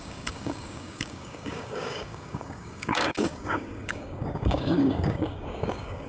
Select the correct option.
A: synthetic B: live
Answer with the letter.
A